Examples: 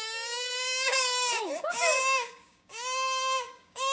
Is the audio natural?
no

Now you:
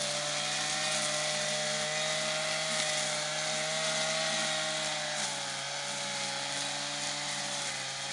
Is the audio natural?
yes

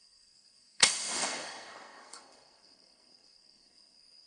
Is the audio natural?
no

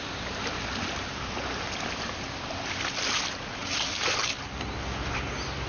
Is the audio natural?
yes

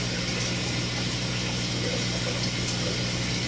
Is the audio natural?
yes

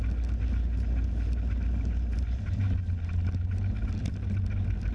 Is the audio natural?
yes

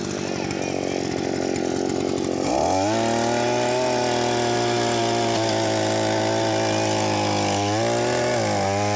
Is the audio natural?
yes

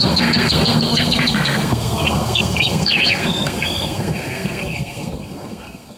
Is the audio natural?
no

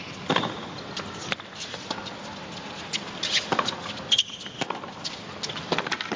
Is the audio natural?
yes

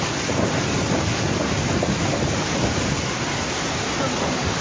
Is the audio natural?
yes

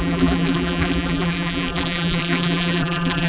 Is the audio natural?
no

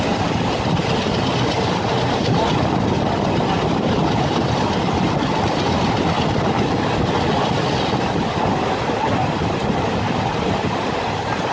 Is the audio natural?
yes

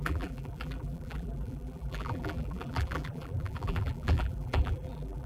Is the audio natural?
no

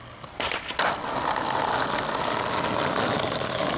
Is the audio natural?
yes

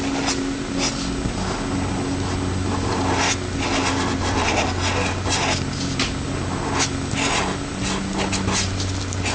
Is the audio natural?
yes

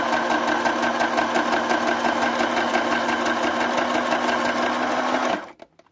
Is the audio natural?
yes